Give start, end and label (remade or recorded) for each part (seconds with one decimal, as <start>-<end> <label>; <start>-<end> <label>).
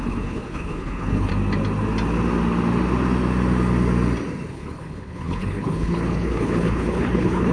0.0-1.3 remade; 1.3-4.5 recorded; 4.5-7.5 remade